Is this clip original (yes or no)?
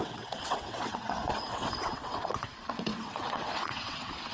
no